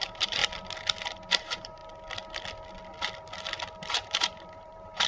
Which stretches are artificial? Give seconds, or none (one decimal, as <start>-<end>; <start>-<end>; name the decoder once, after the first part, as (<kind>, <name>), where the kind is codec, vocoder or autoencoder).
0.0-0.4 (vocoder, BigVGAN v2); 1.3-1.8; 3.9-5.1